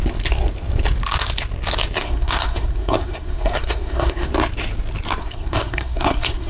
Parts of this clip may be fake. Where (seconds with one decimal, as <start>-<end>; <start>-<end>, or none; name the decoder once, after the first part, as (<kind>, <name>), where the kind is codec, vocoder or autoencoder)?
2.0-4.3 (codec, SNAC); 5.2-6.5